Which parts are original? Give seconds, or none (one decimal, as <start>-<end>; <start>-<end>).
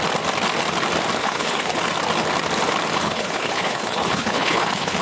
0.0-1.2; 1.8-3.0